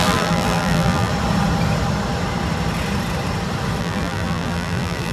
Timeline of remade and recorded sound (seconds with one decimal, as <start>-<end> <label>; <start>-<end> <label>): 0.0-1.1 remade; 1.1-3.8 recorded; 3.8-5.1 remade